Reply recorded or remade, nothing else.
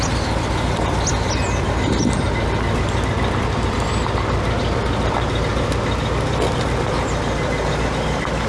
recorded